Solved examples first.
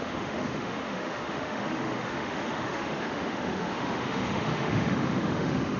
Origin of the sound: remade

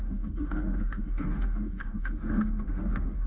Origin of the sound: remade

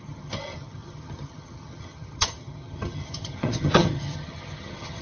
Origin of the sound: remade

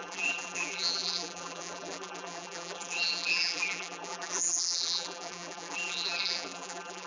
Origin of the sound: remade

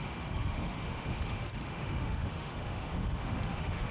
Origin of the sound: remade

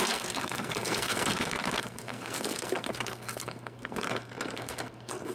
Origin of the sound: remade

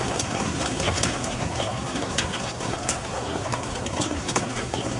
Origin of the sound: remade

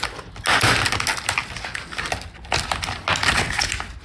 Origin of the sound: recorded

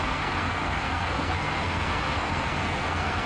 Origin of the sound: remade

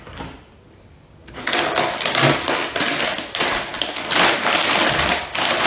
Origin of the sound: recorded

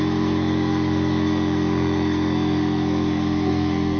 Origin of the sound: remade